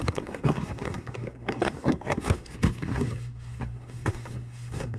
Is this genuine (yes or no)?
no